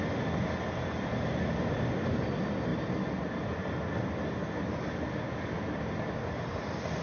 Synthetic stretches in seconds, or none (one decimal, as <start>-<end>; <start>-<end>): none